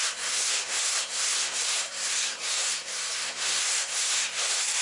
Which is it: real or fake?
fake